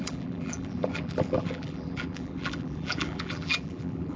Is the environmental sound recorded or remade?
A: remade